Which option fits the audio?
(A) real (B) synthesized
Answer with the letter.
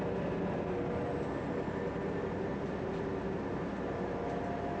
A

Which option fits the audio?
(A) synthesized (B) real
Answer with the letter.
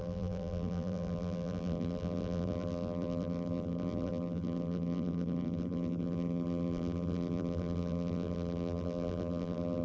A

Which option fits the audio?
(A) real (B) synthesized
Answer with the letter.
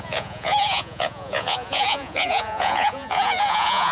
B